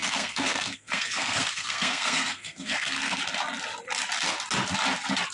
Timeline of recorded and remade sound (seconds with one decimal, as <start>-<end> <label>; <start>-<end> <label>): 0.0-3.2 remade; 3.2-5.3 recorded